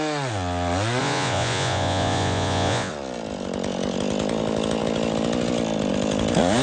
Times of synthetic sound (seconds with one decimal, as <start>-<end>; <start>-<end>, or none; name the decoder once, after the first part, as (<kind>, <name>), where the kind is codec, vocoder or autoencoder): 1.0-2.9 (vocoder, Vocos)